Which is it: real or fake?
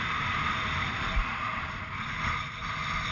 real